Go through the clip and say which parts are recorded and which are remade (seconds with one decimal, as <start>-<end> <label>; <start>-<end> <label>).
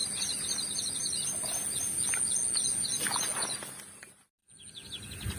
0.0-5.4 recorded